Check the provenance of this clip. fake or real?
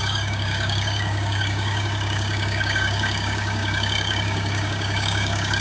fake